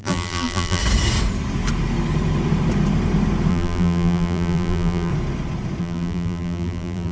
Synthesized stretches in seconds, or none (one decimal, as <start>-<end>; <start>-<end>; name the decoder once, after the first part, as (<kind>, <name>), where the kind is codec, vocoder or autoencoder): 0.0-0.8 (vocoder, BigVGAN v2); 3.5-5.1; 5.8-7.1